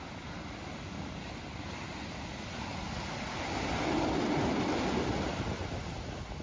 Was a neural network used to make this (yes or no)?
no